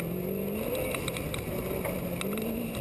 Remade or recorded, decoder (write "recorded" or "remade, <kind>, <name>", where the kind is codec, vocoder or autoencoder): recorded